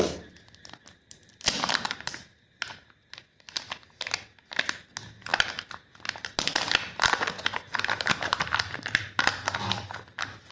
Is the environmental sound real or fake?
real